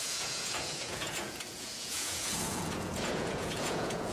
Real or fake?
fake